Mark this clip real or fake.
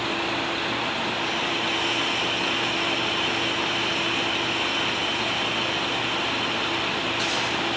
real